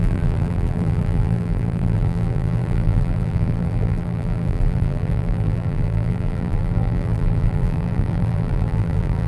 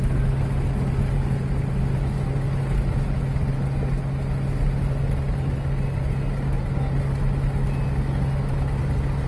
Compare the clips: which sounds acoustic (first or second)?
second